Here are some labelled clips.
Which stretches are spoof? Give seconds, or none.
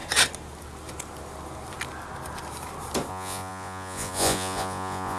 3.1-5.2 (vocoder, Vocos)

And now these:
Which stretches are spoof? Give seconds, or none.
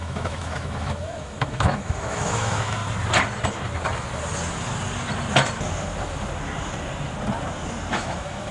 0.0-2.8 (autoencoder, DAC-VAE); 7.9-8.5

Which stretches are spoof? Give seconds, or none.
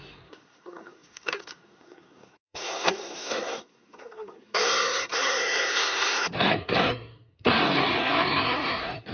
0.0-9.1 (codec, SNAC)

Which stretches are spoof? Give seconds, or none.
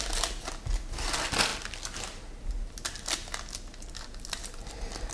none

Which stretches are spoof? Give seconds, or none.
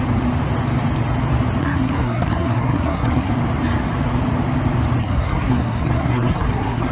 1.6-3.3 (codec, SNAC); 5.0-6.9